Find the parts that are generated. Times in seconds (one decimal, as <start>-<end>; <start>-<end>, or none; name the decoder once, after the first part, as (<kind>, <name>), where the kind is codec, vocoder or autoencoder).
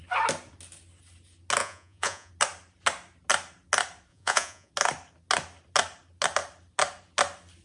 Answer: 1.6-2.3 (vocoder, Vocos); 4.1-4.7